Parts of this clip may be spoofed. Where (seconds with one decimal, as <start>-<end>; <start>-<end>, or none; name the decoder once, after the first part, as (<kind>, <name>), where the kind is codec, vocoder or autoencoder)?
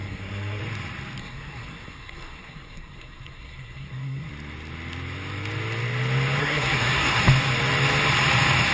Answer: 0.0-0.6 (codec, SNAC); 1.2-4.3; 6.4-7.2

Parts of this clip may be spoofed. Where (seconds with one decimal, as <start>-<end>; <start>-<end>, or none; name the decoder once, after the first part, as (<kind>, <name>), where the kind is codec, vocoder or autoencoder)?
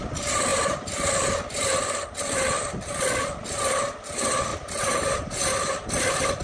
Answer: 4.5-5.9 (vocoder, BigVGAN v2)